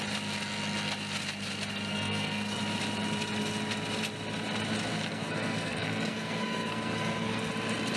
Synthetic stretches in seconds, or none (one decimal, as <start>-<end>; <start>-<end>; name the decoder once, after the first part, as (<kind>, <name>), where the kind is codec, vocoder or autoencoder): 1.9-2.6 (codec, SNAC); 4.9-7.5